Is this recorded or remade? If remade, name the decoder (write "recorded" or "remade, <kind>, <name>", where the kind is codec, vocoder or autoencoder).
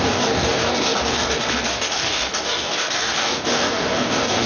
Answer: remade, codec, DAC